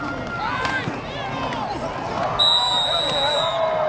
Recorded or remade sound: recorded